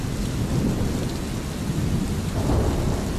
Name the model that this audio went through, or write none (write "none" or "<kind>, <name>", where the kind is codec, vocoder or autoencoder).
none